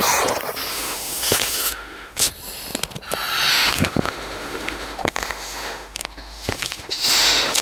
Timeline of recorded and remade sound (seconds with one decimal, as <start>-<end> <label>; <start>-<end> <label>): 0.0-0.7 recorded; 0.7-2.3 remade; 2.3-3.5 recorded; 3.5-7.6 remade